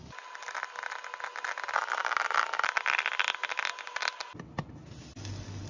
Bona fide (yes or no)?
yes